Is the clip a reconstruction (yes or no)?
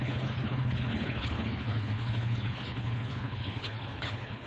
yes